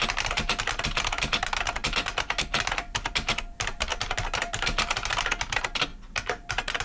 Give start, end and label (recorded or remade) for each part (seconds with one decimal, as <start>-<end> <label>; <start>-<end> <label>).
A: 0.0-6.8 recorded